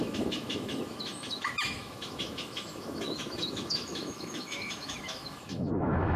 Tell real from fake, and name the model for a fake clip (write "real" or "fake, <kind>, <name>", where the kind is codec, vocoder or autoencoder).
fake, autoencoder, DAC-VAE